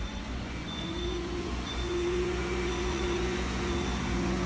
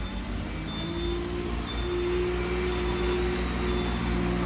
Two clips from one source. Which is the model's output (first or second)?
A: first